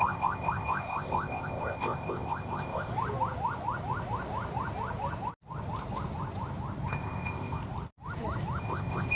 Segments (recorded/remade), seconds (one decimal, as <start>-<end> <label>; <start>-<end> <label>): 0.0-2.9 remade; 2.9-6.9 recorded; 6.9-7.6 remade; 7.6-8.6 recorded; 8.6-9.2 remade